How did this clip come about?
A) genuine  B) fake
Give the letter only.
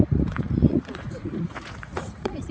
B